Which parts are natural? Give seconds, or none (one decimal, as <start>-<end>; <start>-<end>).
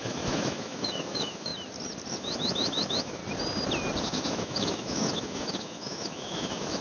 1.5-2.1; 3.2-4.0